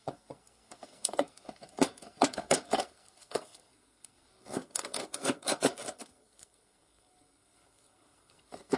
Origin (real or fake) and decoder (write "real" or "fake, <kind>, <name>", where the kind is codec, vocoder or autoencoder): fake, codec, SNAC